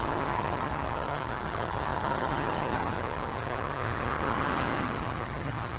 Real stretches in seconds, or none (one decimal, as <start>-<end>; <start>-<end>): none